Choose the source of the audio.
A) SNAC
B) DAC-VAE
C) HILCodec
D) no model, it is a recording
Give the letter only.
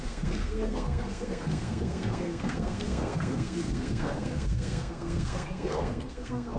A